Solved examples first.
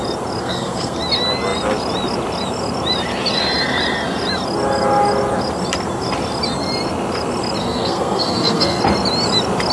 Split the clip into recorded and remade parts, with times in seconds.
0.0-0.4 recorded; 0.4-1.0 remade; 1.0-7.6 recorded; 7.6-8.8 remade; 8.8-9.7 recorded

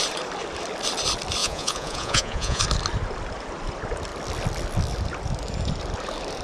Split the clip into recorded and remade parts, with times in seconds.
0.0-1.4 recorded; 1.4-2.6 remade; 2.6-6.4 recorded

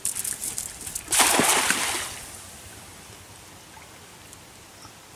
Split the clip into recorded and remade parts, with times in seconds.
0.0-0.4 recorded; 0.4-3.5 remade; 3.5-5.2 recorded

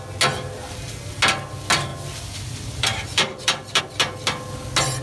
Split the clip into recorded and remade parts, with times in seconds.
0.0-1.9 recorded; 1.9-3.8 remade; 3.8-5.0 recorded

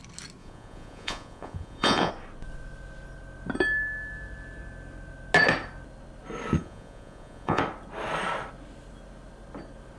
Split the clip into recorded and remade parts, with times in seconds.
0.0-0.4 recorded; 0.4-2.1 remade; 2.1-6.6 recorded; 6.6-7.6 remade; 7.6-10.0 recorded

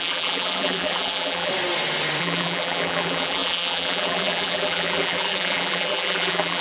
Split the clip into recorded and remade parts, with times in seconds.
0.0-1.5 remade; 1.5-2.2 recorded; 2.2-6.6 remade